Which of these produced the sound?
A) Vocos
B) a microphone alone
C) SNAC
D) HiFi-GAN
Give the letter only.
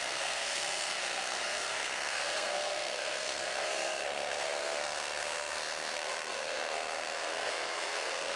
C